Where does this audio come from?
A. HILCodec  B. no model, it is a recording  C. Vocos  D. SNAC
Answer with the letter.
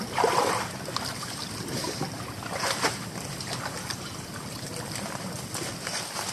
B